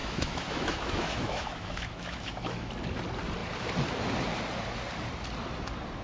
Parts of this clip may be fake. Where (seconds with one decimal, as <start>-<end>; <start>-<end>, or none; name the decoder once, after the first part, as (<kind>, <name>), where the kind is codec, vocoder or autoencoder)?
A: 0.0-2.7 (autoencoder, DAC-VAE)